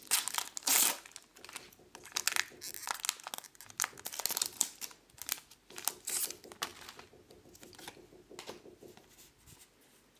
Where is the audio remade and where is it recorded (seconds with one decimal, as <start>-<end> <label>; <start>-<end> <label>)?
0.0-10.2 recorded